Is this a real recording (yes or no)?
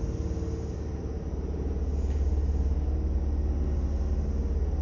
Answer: yes